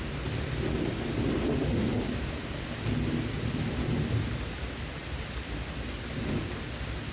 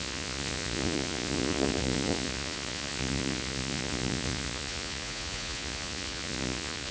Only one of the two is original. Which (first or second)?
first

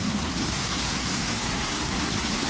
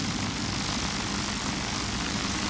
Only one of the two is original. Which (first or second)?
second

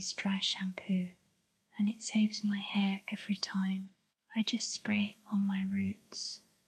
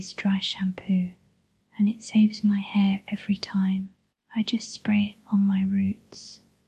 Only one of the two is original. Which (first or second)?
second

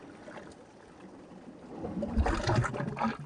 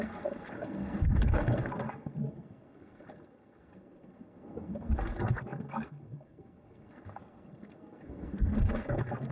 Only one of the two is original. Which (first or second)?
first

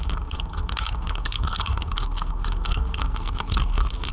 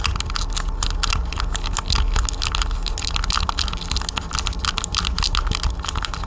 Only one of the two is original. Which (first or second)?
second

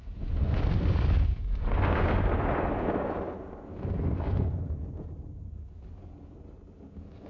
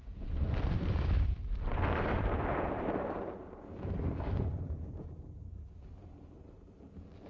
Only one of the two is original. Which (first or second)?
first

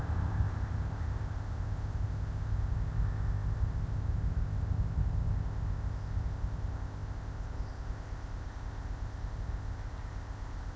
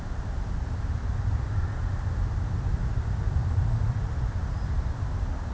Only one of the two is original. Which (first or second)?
second